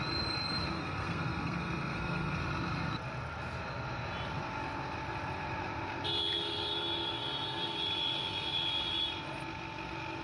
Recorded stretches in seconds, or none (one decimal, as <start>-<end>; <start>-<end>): 0.0-0.7; 2.4-10.2